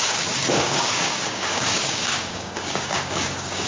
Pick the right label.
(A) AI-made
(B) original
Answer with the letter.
A